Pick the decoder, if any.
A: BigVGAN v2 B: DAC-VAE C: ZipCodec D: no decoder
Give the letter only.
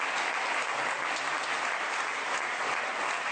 D